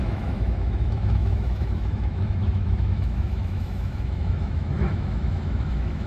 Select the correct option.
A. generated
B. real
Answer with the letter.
A